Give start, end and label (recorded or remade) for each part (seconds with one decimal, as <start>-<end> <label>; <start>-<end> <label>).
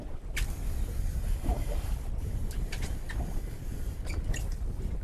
0.0-5.0 recorded